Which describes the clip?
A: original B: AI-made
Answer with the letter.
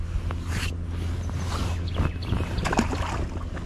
A